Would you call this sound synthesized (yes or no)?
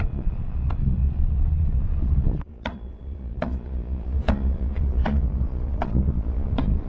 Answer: yes